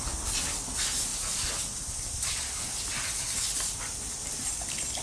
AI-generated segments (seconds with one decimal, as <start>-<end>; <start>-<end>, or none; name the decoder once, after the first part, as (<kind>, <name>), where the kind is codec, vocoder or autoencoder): none